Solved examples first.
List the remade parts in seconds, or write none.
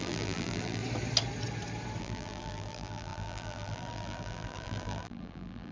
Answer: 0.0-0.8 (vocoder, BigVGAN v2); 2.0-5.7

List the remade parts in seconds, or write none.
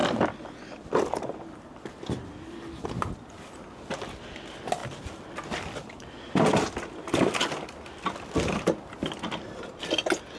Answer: none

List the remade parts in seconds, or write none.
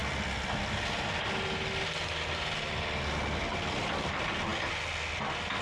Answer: none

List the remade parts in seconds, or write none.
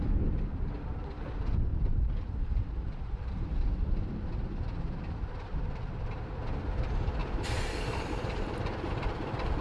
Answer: 1.7-3.3 (vocoder, BigVGAN v2); 7.2-9.6